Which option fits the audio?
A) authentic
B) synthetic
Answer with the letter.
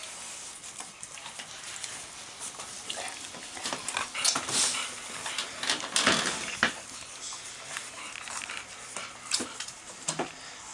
A